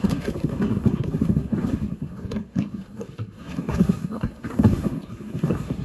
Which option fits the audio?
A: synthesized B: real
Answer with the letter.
A